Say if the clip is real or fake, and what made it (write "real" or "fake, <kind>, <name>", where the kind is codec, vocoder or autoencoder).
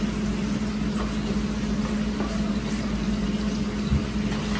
real